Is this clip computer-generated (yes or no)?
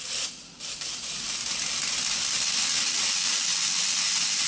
no